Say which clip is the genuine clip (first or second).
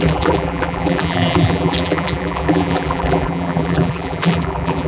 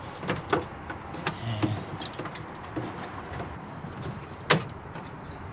second